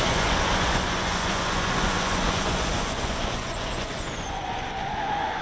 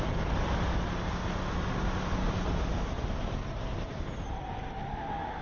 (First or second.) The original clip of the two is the second